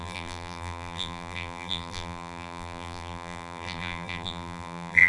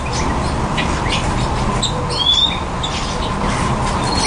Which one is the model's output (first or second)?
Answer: first